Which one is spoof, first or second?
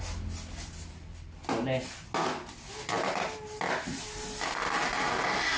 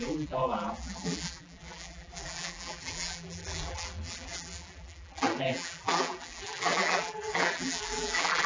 second